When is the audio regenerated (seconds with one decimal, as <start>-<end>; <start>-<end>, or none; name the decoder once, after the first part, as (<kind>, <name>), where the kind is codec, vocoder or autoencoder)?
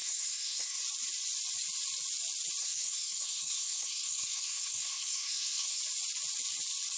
0.0-0.8 (codec, SNAC); 2.6-5.8